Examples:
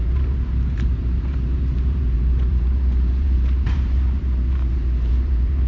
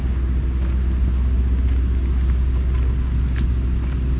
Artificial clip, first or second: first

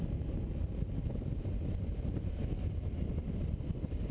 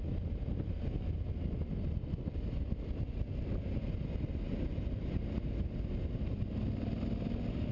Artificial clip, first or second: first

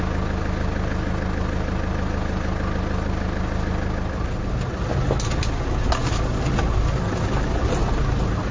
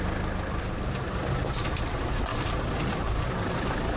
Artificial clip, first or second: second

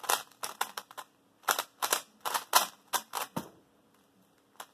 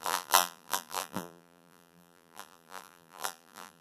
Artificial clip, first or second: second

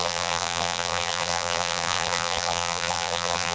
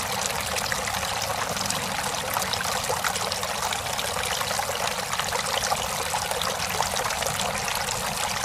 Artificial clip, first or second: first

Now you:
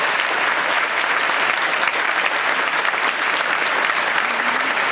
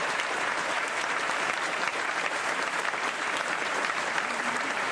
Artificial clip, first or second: second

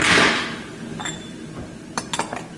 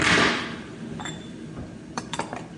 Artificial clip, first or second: second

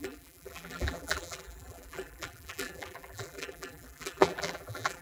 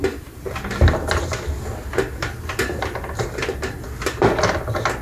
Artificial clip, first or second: first